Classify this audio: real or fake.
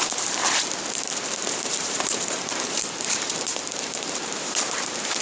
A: fake